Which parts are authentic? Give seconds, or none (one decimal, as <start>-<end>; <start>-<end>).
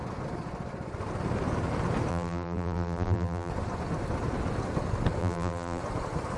0.0-2.1; 3.5-5.2; 5.8-6.4